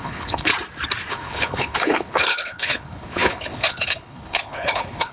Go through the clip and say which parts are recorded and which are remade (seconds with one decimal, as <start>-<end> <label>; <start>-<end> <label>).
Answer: 0.0-0.5 remade; 0.5-1.1 recorded; 1.1-5.1 remade